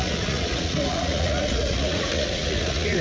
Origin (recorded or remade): remade